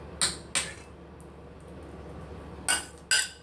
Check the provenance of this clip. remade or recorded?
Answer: recorded